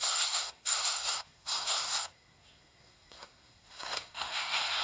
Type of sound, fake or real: fake